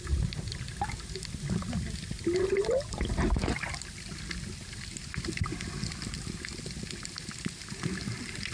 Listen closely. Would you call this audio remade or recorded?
recorded